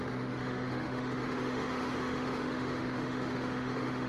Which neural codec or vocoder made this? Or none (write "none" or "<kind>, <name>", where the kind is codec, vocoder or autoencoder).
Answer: autoencoder, DAC-VAE